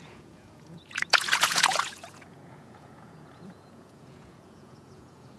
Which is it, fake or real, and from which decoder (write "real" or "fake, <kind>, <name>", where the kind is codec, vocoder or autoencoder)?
fake, vocoder, Vocos